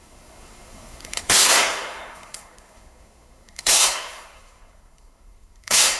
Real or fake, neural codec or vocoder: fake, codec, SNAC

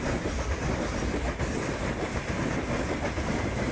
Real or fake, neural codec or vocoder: real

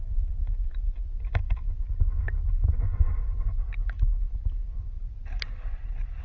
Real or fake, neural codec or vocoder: real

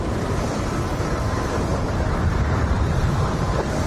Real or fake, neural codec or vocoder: fake, vocoder, BigVGAN v2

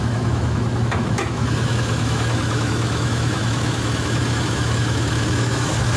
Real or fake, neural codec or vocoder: fake, autoencoder, DAC-VAE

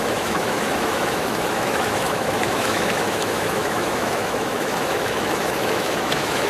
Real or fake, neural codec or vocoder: fake, autoencoder, DAC-VAE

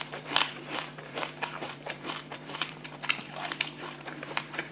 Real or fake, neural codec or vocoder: fake, vocoder, BigVGAN v2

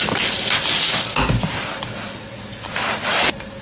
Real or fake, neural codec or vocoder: real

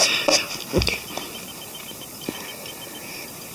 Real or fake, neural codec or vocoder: real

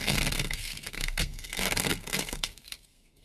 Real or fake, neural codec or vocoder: fake, codec, SNAC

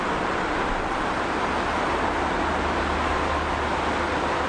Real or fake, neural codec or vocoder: real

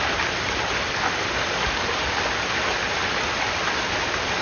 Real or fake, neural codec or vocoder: real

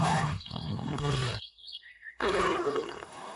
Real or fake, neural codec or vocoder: fake, codec, SNAC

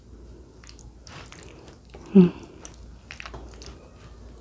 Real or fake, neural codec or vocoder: real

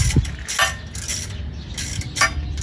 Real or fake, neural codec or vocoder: real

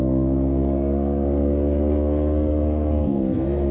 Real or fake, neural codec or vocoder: fake, codec, SNAC